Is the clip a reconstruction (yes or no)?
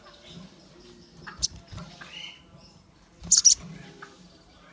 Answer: no